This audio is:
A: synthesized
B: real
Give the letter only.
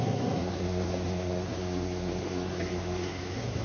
A